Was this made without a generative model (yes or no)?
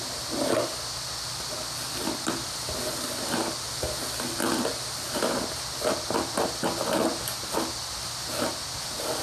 yes